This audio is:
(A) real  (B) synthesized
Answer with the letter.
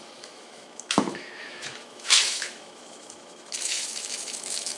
B